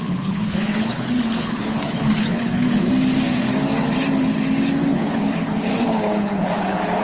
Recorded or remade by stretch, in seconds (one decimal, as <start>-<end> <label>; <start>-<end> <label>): 0.0-2.9 remade; 2.9-4.9 recorded; 4.9-7.0 remade